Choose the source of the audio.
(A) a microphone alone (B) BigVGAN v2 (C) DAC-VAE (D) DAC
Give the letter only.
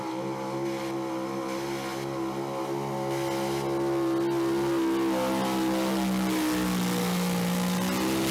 A